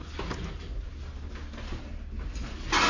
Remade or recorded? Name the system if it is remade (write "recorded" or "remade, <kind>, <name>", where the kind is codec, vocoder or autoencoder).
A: recorded